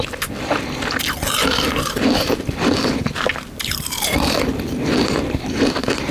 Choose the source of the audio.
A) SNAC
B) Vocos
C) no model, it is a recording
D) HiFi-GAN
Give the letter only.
C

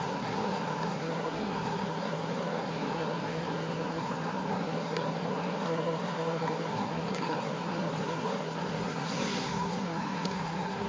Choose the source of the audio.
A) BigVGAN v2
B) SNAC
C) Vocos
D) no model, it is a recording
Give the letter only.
B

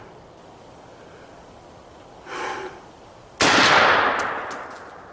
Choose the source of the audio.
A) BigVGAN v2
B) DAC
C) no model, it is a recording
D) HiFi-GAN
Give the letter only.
C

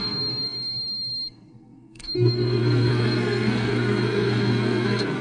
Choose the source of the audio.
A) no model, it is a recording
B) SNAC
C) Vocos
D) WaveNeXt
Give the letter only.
B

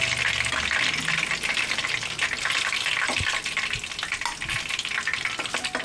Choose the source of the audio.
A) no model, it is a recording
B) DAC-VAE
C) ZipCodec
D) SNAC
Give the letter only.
A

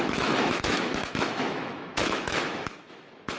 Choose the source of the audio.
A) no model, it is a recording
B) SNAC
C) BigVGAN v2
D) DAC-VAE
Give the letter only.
D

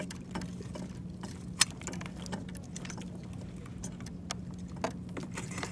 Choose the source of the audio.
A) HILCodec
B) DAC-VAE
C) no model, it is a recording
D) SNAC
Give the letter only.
C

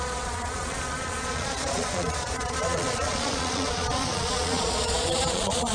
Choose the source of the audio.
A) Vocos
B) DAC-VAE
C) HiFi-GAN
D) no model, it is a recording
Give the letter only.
A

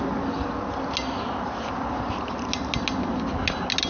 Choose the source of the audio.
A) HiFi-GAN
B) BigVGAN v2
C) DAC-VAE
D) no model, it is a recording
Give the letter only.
D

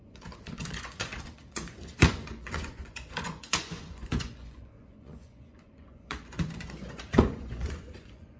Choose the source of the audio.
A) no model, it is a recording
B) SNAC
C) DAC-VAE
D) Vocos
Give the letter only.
D